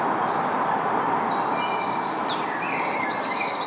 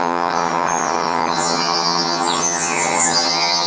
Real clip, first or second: first